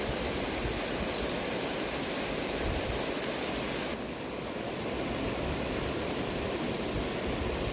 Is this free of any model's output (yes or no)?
yes